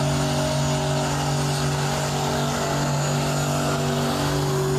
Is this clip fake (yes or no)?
no